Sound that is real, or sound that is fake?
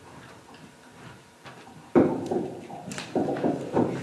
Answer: fake